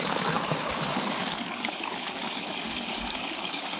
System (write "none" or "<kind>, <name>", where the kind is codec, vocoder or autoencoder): codec, DAC